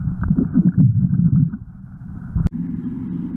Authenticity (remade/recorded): remade